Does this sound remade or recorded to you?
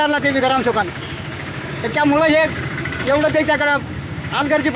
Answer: remade